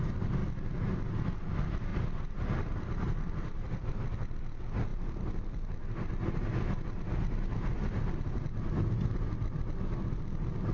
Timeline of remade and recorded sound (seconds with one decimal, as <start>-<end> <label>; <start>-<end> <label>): 0.0-1.9 recorded; 1.9-3.9 remade; 3.9-4.9 recorded; 4.9-6.1 remade; 6.1-10.7 recorded